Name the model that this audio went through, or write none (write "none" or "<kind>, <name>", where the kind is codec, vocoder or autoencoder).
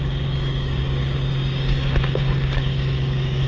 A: codec, DAC